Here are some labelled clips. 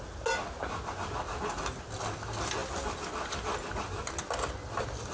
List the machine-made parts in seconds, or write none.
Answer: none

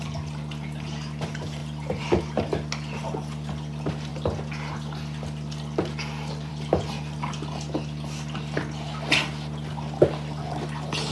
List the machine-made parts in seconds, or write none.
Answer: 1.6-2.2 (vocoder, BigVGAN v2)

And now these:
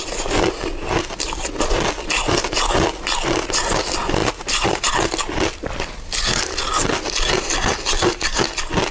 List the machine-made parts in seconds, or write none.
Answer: 4.2-4.9 (vocoder, BigVGAN v2)